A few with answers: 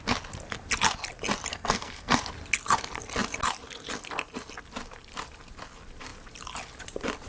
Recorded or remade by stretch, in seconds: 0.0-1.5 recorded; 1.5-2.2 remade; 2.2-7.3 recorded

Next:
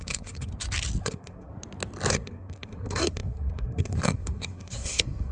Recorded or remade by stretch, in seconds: 0.0-0.5 remade; 0.5-1.0 recorded; 1.0-1.5 remade; 1.5-2.1 recorded; 2.1-5.3 remade

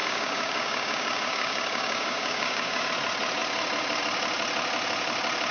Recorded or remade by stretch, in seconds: 0.0-2.9 remade; 2.9-5.5 recorded

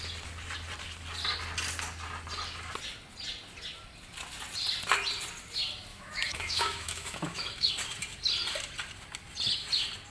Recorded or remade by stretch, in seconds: 0.0-5.9 recorded; 5.9-7.7 remade; 7.7-10.1 recorded

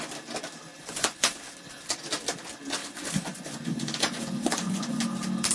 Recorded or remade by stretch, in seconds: 0.0-0.7 recorded; 0.7-1.3 remade; 1.3-2.8 recorded; 2.8-5.0 remade; 5.0-5.5 recorded

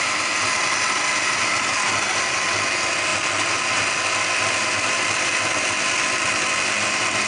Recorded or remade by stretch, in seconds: 0.0-7.3 recorded

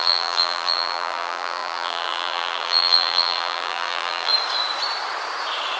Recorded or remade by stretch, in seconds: 0.0-4.3 remade; 4.3-5.8 recorded